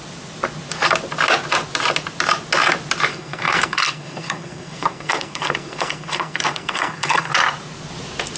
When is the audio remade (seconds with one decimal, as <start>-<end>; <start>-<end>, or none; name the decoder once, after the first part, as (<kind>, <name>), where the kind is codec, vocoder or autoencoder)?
3.1-7.3 (codec, SNAC)